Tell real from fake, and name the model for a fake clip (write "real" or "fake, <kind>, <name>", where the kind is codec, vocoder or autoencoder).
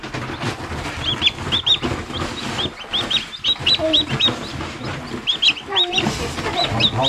real